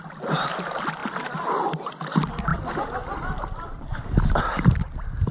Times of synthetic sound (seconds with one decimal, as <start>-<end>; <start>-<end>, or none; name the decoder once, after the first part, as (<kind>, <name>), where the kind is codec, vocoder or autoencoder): none